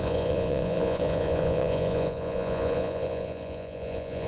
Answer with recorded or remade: remade